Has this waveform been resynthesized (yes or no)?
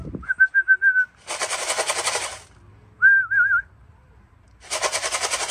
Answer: no